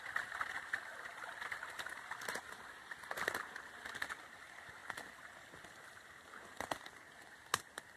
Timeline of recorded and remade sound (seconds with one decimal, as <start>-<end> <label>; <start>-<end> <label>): 0.0-8.0 recorded